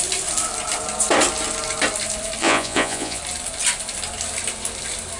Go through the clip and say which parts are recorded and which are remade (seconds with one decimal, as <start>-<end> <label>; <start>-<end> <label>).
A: 0.0-2.4 recorded; 2.4-3.2 remade; 3.2-5.2 recorded